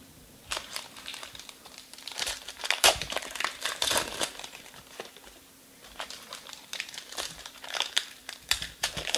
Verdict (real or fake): fake